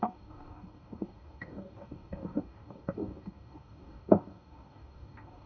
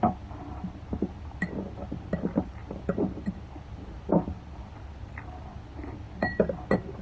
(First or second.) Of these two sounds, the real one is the second